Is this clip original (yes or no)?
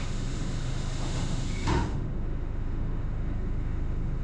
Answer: no